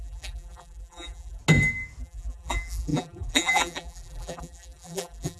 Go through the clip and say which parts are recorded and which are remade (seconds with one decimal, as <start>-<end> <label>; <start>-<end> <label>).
0.0-1.4 remade; 1.4-2.0 recorded; 2.0-5.4 remade